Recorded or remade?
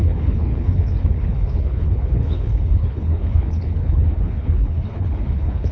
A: remade